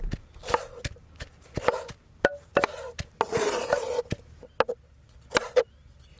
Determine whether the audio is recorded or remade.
recorded